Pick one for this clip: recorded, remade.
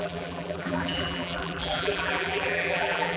remade